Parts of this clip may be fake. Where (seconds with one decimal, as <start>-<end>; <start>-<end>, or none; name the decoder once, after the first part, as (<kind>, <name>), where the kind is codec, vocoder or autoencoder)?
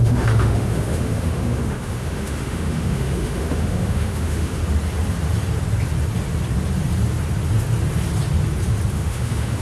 0.0-4.6 (autoencoder, DAC-VAE); 8.9-9.6